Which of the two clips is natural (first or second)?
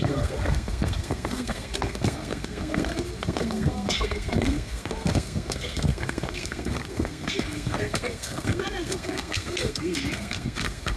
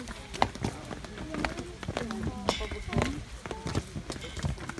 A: second